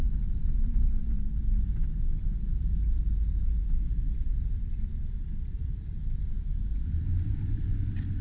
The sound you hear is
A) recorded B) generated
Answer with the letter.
B